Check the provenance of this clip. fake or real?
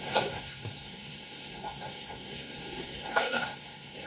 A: fake